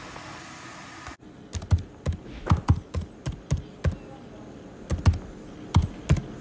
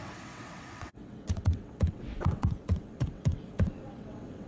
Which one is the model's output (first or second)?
second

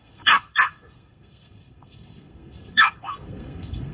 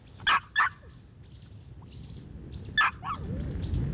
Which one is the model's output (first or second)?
first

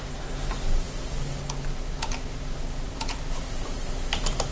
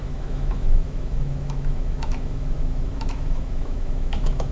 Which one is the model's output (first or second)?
second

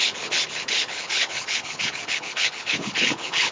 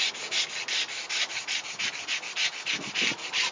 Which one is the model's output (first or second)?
first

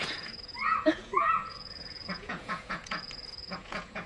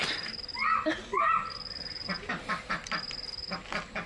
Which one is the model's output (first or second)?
first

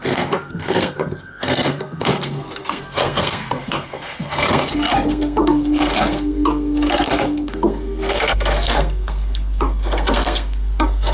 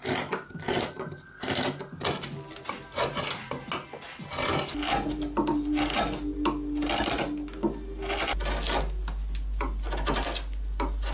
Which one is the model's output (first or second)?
first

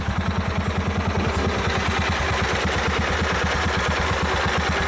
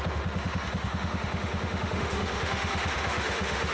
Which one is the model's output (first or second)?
second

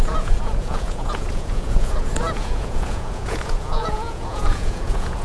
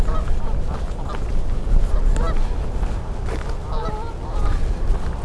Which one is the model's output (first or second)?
first